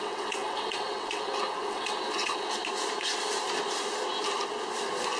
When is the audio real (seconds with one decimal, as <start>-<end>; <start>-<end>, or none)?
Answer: 2.6-5.2